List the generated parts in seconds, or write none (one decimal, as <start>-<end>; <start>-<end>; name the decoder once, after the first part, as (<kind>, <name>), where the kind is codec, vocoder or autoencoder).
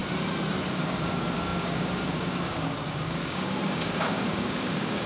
0.7-5.1 (codec, DAC)